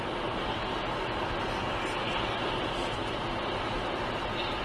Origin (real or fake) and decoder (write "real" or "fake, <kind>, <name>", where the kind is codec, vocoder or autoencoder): real